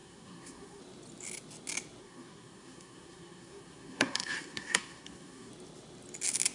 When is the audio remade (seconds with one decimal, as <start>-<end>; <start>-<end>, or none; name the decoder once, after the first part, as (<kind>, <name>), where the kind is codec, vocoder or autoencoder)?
0.0-0.8 (codec, SNAC); 2.0-5.5

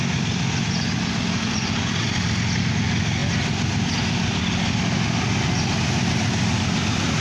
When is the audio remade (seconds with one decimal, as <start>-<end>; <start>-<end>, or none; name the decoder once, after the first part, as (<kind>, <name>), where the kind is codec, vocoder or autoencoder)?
none

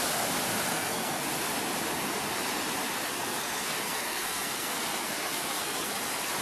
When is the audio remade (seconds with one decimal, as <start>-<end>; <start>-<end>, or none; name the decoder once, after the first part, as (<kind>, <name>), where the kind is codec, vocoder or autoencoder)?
0.7-1.2 (codec, SNAC); 3.1-5.9

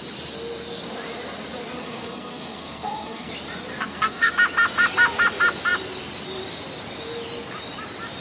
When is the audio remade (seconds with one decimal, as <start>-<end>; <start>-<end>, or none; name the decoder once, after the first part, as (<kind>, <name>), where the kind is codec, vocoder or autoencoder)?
1.8-3.3 (codec, SNAC); 3.7-4.3

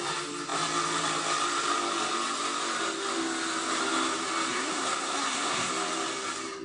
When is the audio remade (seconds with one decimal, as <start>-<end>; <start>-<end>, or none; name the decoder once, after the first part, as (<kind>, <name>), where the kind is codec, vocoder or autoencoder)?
4.5-5.7 (codec, SNAC)

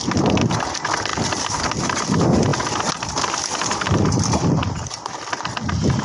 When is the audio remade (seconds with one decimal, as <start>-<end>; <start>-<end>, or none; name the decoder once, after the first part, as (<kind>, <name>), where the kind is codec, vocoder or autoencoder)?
none

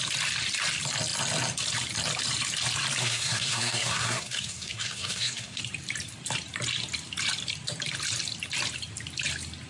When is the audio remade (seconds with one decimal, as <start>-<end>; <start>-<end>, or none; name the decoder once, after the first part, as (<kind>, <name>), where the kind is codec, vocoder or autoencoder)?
3.0-5.6 (codec, SNAC)

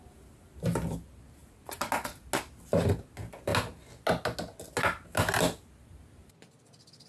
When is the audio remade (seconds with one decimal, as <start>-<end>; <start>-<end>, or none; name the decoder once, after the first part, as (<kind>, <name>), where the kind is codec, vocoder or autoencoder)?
none